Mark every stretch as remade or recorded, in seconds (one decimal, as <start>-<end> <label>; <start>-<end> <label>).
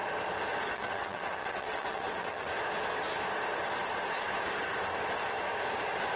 0.0-0.7 recorded; 0.7-2.5 remade; 2.5-6.2 recorded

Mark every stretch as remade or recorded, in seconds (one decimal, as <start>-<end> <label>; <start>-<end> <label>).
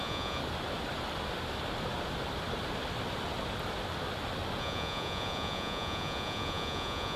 0.0-0.4 remade; 0.4-4.6 recorded; 4.6-7.2 remade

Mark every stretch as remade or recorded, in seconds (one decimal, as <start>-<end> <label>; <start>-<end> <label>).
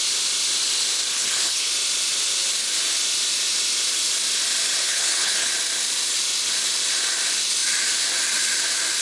0.0-1.1 recorded; 1.1-1.7 remade; 1.7-4.8 recorded; 4.8-5.5 remade; 5.5-9.0 recorded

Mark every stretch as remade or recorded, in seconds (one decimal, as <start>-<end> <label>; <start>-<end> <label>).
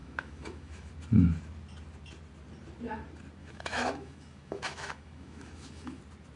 0.0-0.9 remade; 0.9-3.4 recorded; 3.4-6.0 remade; 6.0-6.4 recorded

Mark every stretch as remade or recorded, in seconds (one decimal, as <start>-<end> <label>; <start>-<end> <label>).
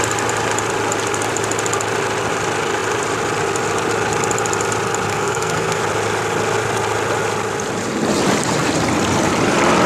0.0-5.1 recorded; 5.1-5.8 remade; 5.8-9.9 recorded